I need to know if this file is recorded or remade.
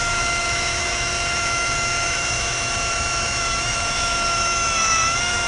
remade